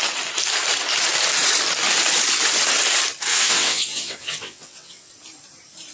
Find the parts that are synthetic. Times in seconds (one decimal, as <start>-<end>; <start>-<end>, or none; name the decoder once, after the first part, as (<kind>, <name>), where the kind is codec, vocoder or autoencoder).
3.3-5.1 (vocoder, WaveNeXt)